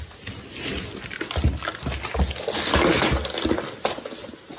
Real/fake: real